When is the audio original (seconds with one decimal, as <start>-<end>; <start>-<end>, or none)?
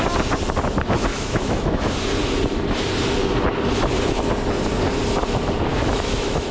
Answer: 0.0-1.1; 1.9-5.7